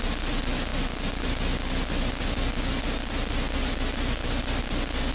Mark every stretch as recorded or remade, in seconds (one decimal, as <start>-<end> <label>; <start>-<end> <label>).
0.0-5.1 recorded